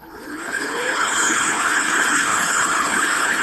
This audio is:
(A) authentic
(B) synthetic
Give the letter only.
B